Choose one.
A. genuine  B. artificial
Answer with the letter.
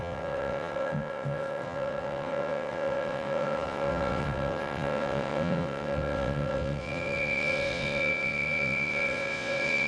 B